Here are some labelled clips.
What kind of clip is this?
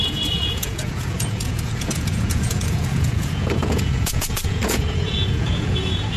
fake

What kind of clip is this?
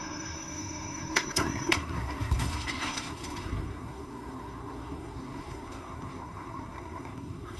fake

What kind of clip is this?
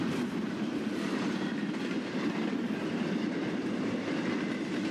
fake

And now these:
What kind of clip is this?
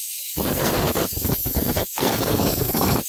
fake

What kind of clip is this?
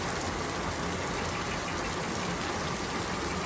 real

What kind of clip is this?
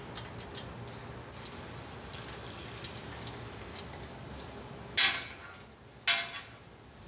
real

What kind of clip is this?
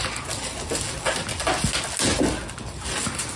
real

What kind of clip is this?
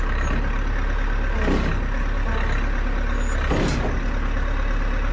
real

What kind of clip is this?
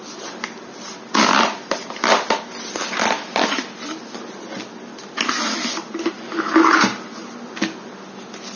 real